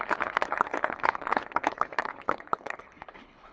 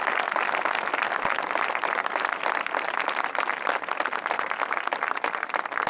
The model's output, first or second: first